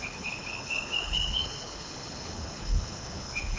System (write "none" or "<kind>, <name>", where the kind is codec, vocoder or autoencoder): codec, HILCodec